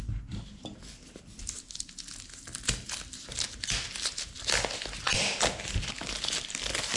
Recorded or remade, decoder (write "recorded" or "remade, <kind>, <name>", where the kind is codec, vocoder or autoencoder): recorded